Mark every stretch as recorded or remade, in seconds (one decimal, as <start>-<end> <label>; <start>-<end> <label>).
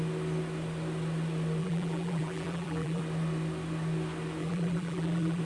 0.0-1.6 recorded; 1.6-3.0 remade; 3.0-4.4 recorded; 4.4-5.4 remade